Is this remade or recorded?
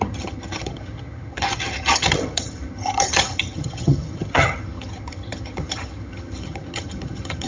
remade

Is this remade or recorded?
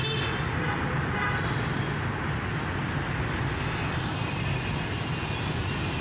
recorded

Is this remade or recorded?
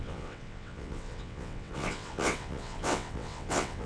remade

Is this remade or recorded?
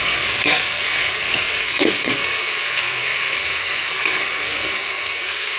remade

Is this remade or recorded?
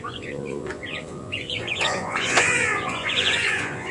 remade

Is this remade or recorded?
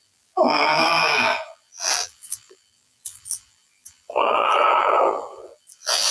remade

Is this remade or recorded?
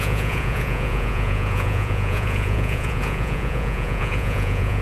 remade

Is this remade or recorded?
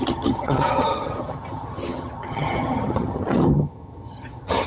remade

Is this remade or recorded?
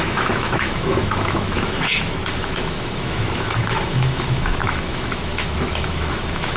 remade